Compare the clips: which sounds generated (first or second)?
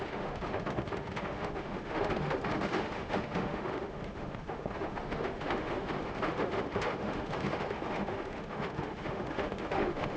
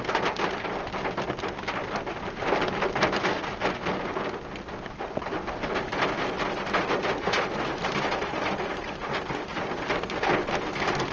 first